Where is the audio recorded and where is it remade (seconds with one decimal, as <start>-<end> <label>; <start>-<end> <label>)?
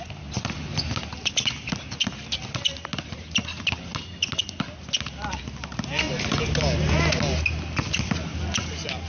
0.0-9.1 recorded